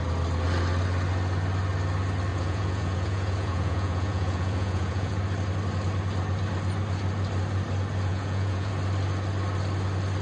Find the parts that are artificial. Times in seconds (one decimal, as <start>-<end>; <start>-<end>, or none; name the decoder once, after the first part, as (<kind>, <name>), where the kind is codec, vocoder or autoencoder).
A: 2.3-5.2 (vocoder, Vocos); 8.1-8.7